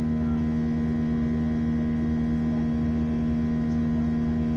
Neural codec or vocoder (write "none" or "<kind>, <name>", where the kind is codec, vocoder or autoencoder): none